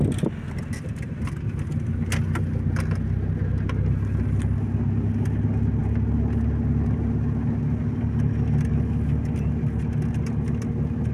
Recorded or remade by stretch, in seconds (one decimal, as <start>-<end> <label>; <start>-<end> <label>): 0.0-11.1 recorded